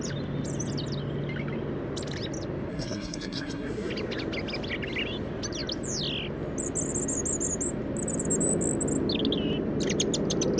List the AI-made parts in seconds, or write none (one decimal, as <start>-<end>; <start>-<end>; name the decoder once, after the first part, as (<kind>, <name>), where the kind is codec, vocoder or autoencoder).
2.7-3.9 (codec, SNAC)